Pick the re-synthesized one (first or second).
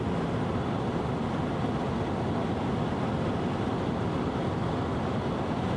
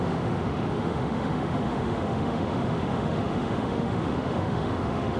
second